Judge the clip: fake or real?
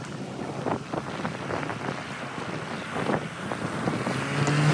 real